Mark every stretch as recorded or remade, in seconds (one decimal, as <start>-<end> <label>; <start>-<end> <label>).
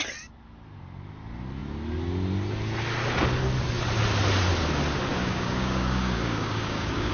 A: 0.0-5.1 recorded; 5.1-7.1 remade